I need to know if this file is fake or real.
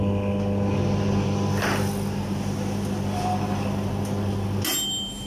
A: real